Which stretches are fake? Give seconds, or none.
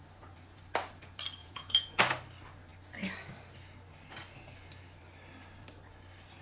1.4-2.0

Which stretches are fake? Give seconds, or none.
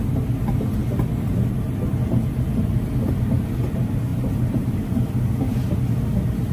4.1-4.8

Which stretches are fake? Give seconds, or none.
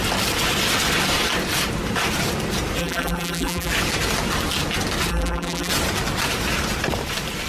2.8-3.7; 5.1-5.7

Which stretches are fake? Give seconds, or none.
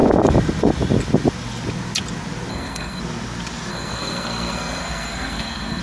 2.5-3.0; 3.7-5.8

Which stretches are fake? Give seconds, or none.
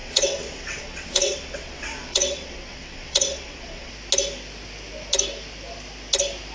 0.0-3.9